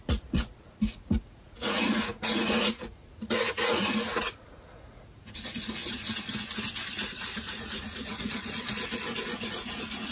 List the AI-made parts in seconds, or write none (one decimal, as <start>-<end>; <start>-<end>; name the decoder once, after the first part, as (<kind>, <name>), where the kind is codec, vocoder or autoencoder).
0.0-5.8 (vocoder, Vocos); 6.9-10.1